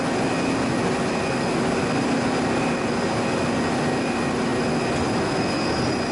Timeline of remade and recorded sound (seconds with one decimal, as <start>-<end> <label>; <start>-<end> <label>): 0.0-6.1 recorded